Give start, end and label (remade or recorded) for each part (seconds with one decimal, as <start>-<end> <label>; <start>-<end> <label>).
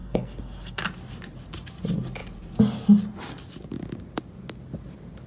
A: 0.0-0.8 remade; 0.8-5.3 recorded